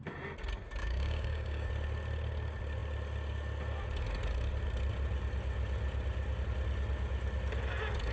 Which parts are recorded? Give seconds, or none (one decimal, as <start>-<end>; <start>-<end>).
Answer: 0.0-0.8; 1.7-8.1